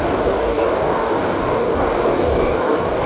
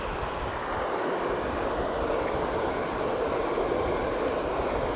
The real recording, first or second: second